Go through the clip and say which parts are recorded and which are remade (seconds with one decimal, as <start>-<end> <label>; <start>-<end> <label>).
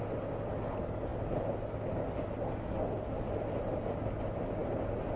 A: 0.0-5.2 recorded